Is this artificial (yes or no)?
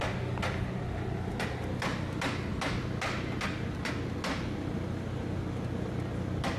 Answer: no